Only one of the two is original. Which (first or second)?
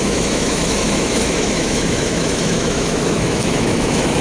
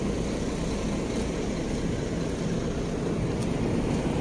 second